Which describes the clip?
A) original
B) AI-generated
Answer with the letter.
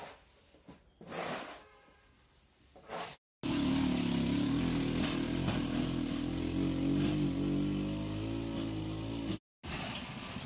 A